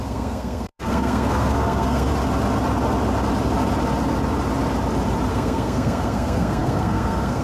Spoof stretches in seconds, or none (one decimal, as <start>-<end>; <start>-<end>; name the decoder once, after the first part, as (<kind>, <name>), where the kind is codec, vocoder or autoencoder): 0.0-2.1 (codec, SNAC); 5.3-7.4